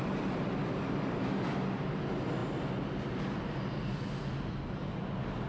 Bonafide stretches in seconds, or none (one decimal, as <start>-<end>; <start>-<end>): 0.0-5.5